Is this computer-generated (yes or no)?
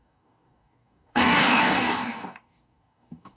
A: yes